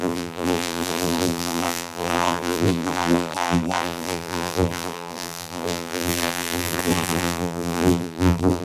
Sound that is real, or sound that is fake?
fake